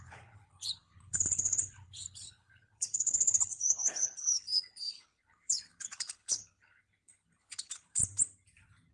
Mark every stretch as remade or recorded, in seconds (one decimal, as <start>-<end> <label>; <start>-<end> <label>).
0.0-8.0 remade; 8.0-8.9 recorded